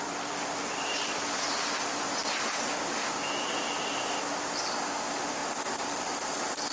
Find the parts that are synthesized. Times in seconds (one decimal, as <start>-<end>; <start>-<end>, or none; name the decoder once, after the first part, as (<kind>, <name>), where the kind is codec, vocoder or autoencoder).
0.0-2.2 (vocoder, BigVGAN v2); 3.8-5.4; 6.3-6.7